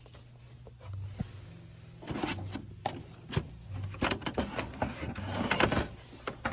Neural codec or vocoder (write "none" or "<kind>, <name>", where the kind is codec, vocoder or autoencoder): none